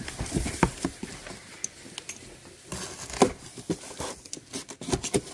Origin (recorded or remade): recorded